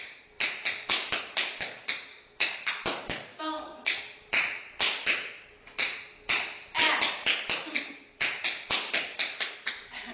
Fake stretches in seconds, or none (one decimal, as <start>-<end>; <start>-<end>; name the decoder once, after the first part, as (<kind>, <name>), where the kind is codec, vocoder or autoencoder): 2.1-2.7 (codec, DAC); 3.3-4.0